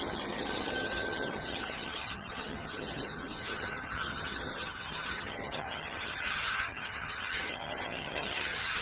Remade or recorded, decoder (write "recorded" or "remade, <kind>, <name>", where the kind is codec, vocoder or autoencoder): remade, vocoder, HiFi-GAN